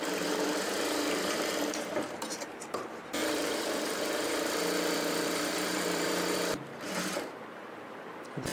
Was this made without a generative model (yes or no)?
no